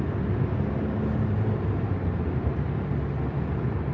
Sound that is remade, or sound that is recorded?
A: recorded